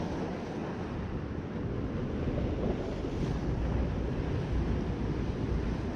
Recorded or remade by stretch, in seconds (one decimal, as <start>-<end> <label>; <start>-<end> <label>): 0.0-6.0 recorded